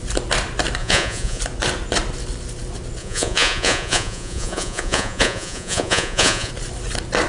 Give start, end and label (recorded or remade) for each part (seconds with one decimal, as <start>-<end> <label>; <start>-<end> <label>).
0.0-0.8 recorded; 0.8-1.4 remade; 1.4-3.0 recorded; 3.0-6.5 remade; 6.5-7.3 recorded